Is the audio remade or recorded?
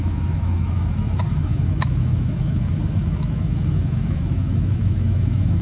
remade